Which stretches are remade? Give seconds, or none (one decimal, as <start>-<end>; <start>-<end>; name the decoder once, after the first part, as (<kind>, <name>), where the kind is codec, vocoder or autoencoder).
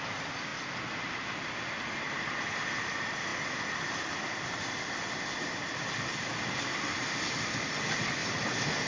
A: 0.0-0.5 (vocoder, BigVGAN v2); 2.1-8.2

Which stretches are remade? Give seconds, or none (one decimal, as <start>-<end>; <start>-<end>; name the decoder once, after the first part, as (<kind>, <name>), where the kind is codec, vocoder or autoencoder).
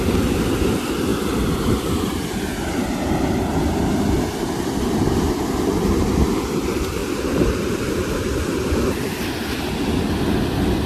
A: 7.0-9.7 (vocoder, BigVGAN v2)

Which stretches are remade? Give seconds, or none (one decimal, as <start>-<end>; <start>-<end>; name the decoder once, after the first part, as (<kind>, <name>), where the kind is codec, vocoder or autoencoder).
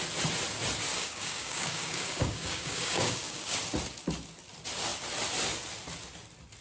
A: 0.9-3.6 (codec, DAC)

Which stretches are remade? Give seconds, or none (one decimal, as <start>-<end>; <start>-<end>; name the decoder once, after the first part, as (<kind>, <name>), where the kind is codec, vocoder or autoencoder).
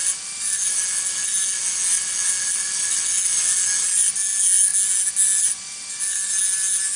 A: none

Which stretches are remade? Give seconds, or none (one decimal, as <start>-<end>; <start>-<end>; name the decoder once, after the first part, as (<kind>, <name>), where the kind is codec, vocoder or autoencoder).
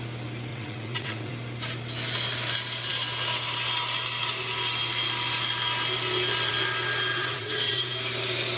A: 0.5-1.3 (vocoder, WaveNeXt); 7.1-7.9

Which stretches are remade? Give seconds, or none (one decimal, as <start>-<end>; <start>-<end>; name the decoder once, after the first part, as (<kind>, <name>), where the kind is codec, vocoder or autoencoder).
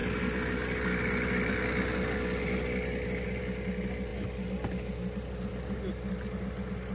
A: none